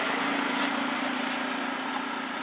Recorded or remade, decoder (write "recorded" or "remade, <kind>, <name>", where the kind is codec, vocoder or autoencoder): recorded